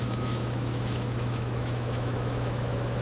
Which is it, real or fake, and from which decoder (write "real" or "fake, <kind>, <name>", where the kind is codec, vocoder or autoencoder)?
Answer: fake, autoencoder, DAC-VAE